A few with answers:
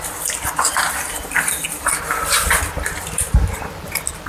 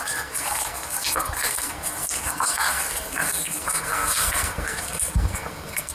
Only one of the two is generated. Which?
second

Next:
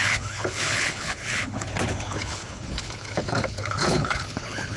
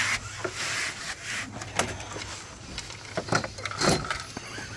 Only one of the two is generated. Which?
first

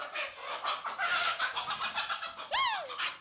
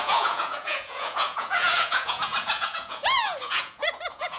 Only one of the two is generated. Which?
second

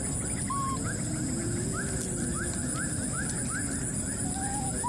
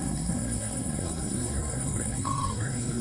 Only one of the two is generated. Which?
second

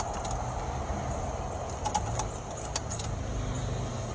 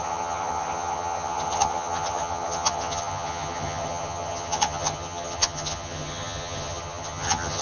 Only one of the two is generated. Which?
second